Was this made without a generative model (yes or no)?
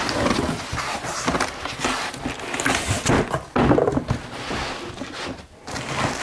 yes